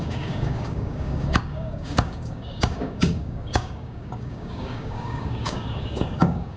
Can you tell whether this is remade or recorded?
remade